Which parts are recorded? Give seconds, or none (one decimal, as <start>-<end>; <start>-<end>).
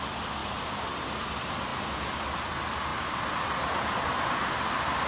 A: 0.0-5.1